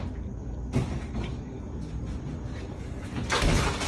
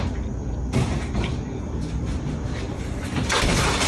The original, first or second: first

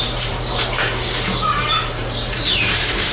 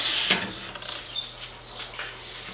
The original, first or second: second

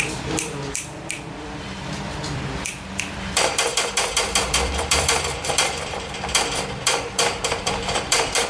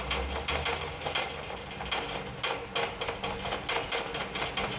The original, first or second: second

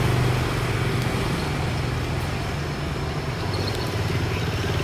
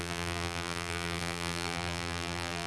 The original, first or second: first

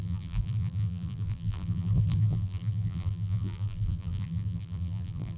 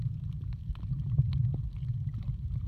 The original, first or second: second